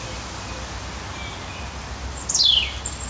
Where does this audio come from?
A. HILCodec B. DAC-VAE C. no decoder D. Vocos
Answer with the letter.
C